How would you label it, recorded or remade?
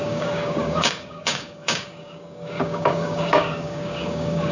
remade